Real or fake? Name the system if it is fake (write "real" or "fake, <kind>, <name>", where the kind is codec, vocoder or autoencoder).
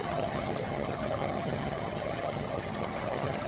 fake, vocoder, HiFi-GAN